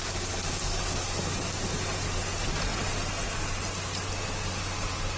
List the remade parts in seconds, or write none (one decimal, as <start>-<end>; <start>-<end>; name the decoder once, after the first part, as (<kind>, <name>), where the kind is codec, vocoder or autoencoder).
none